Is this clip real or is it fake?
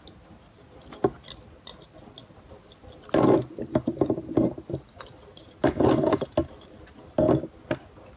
real